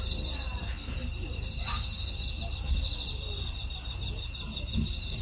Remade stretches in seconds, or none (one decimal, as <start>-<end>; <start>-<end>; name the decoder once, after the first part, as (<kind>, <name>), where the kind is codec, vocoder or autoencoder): none